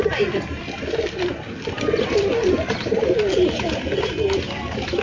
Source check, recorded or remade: remade